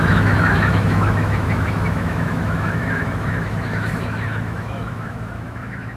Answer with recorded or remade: remade